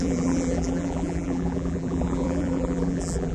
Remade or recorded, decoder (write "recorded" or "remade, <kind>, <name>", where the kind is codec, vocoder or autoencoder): remade, vocoder, BigVGAN v2